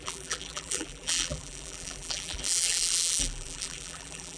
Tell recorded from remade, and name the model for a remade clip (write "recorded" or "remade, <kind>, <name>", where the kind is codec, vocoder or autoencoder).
remade, vocoder, BigVGAN v2